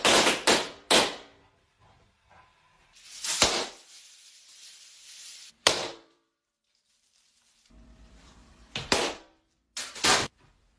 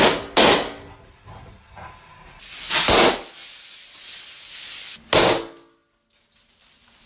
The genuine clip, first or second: second